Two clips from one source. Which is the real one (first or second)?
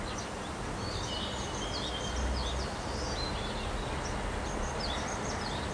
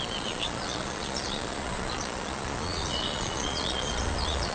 first